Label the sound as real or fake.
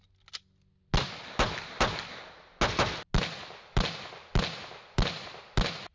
real